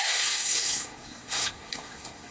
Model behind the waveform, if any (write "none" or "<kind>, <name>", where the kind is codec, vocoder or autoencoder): codec, SNAC